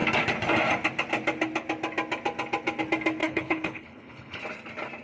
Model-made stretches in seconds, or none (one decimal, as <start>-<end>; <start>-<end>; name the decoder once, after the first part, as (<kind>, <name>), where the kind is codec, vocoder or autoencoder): 3.2-4.4 (codec, HILCodec)